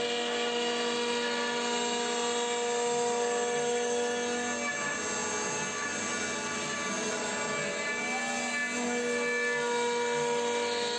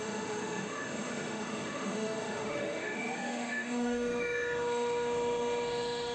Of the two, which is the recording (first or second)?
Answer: first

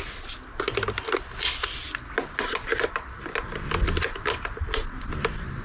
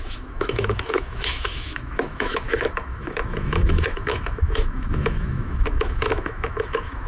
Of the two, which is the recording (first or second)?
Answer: first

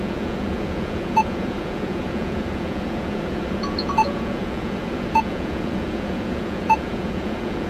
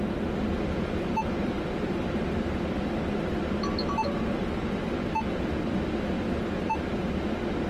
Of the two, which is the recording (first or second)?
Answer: second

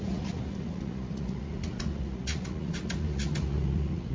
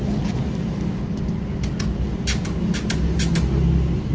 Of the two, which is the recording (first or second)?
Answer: second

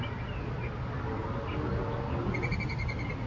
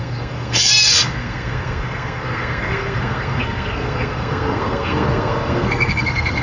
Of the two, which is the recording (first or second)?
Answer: first